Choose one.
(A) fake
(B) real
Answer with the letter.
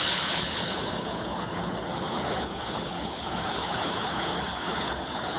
A